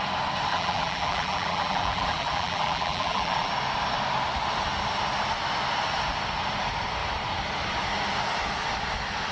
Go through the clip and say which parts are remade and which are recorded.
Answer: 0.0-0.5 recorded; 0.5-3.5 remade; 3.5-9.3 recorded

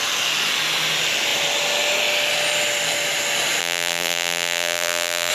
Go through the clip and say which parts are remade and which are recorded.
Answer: 0.0-3.6 recorded; 3.6-5.3 remade

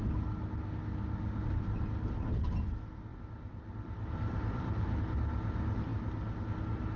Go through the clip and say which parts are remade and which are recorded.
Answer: 0.0-3.1 recorded; 3.1-5.0 remade; 5.0-7.0 recorded

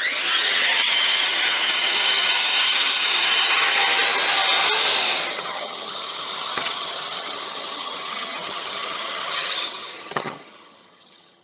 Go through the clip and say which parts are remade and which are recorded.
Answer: 0.0-3.8 remade; 3.8-5.3 recorded; 5.3-11.4 remade